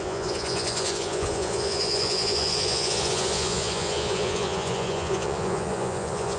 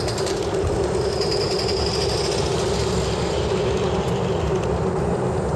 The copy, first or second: first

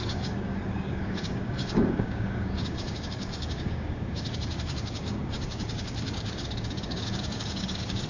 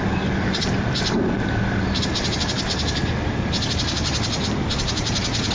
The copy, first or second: first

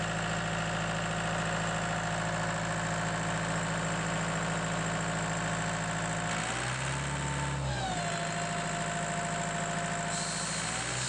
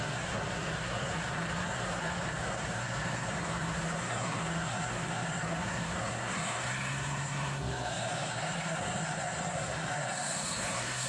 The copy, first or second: second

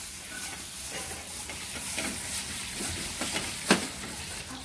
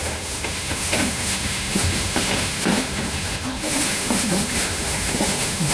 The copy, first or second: second